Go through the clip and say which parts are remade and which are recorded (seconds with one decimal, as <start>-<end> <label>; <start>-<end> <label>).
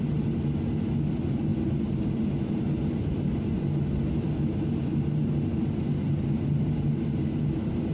0.0-7.9 recorded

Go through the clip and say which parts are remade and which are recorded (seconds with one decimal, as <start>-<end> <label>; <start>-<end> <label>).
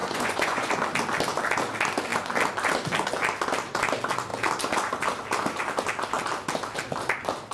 0.0-0.7 remade; 0.7-7.5 recorded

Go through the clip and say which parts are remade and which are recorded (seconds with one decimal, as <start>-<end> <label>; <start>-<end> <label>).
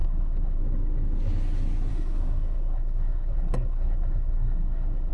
0.0-0.6 remade; 0.6-1.9 recorded; 1.9-5.1 remade